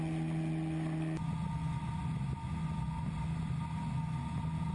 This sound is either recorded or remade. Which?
recorded